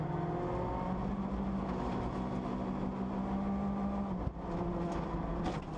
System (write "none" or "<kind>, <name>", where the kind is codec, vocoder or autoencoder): none